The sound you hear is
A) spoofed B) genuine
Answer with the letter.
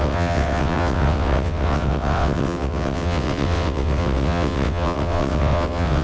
A